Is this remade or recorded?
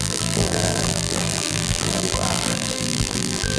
remade